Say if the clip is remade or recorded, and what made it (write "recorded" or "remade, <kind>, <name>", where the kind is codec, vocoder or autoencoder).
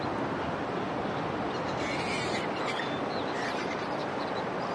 recorded